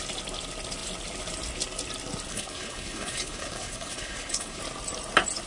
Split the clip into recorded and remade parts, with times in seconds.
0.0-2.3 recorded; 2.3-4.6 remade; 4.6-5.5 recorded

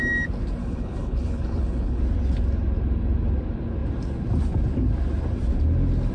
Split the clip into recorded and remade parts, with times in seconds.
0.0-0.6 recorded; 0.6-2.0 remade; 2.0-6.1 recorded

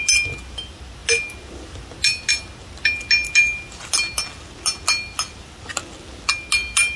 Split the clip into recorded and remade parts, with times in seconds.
0.0-7.0 recorded

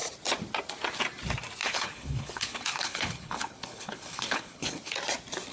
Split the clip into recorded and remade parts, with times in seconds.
0.0-1.6 recorded; 1.6-4.9 remade; 4.9-5.5 recorded

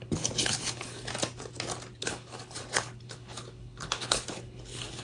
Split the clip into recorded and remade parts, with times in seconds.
0.0-1.1 remade; 1.1-2.0 recorded; 2.0-5.0 remade

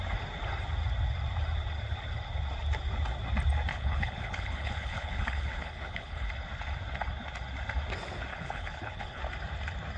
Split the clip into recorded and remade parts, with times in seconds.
0.0-3.7 recorded; 3.7-6.3 remade; 6.3-8.3 recorded; 8.3-9.2 remade; 9.2-10.0 recorded

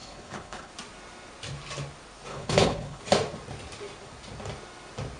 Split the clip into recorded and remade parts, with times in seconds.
0.0-0.7 remade; 0.7-2.3 recorded; 2.3-3.0 remade; 3.0-5.2 recorded